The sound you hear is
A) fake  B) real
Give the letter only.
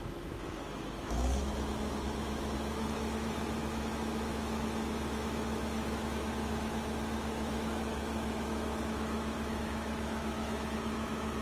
A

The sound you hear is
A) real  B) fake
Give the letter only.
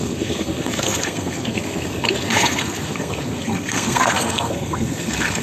B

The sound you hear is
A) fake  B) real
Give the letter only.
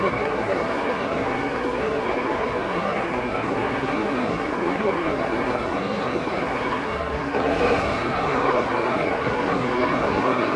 A